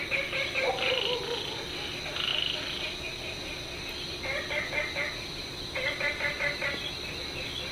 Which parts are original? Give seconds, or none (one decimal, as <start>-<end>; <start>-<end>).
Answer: 0.0-7.7